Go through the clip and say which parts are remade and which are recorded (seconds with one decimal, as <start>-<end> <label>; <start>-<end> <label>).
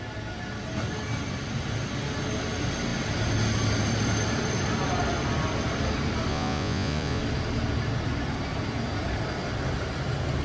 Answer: 0.0-6.3 recorded; 6.3-7.2 remade; 7.2-10.4 recorded